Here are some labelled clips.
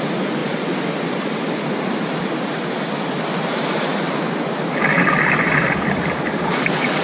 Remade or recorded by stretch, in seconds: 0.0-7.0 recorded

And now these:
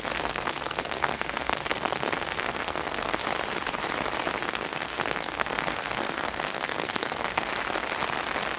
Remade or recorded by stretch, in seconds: 0.0-3.2 remade; 3.2-4.4 recorded; 4.4-7.5 remade; 7.5-8.6 recorded

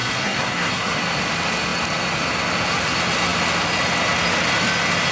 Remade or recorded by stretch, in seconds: 0.0-1.0 remade; 1.0-5.1 recorded

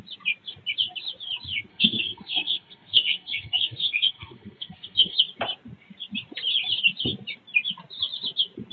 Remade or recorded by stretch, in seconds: 0.0-1.7 recorded; 1.7-5.2 remade; 5.2-8.7 recorded

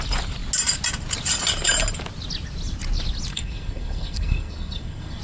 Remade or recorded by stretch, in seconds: 0.0-3.3 recorded; 3.3-5.2 remade

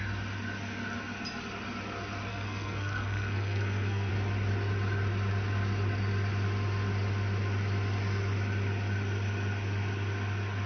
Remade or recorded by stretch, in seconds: 0.0-2.3 recorded; 2.3-4.1 remade; 4.1-10.7 recorded